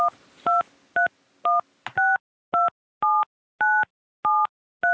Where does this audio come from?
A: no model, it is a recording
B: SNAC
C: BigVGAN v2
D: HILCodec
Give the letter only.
A